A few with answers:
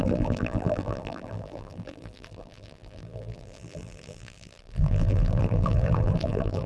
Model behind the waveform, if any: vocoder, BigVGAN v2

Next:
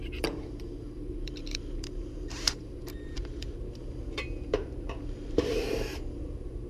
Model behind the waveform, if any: vocoder, BigVGAN v2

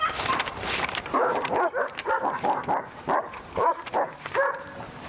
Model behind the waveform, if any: vocoder, BigVGAN v2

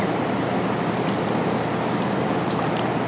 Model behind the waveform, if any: none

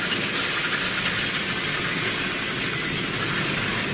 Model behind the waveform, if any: none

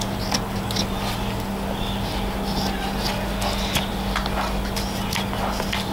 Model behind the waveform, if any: none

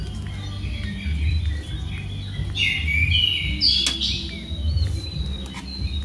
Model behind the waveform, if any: none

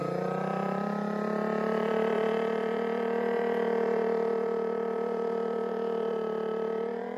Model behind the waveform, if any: vocoder, BigVGAN v2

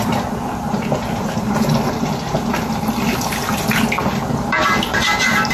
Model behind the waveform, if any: vocoder, BigVGAN v2